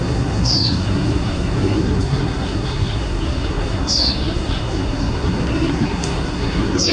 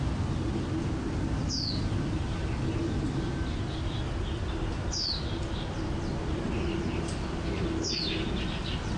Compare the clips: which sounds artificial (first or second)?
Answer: first